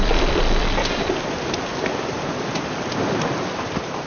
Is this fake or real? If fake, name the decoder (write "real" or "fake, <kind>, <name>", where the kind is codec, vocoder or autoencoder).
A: fake, vocoder, BigVGAN v2